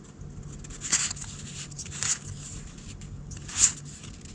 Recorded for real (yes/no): yes